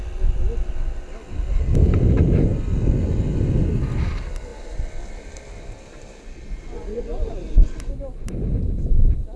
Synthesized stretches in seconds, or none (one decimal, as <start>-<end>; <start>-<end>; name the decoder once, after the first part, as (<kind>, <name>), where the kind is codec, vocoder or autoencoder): none